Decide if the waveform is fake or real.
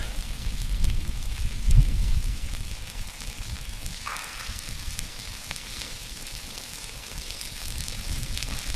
fake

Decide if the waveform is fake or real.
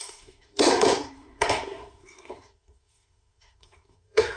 fake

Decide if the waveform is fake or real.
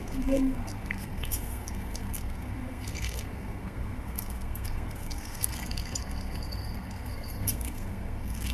fake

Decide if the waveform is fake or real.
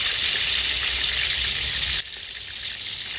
real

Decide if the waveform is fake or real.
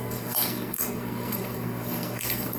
fake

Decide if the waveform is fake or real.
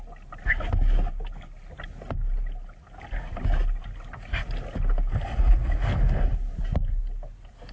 real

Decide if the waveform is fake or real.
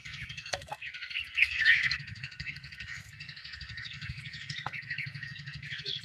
fake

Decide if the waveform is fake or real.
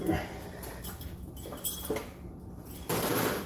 real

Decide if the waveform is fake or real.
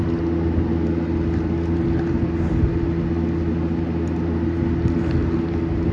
real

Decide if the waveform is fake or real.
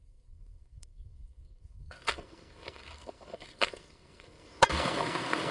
fake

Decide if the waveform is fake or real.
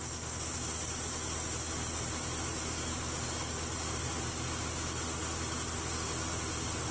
real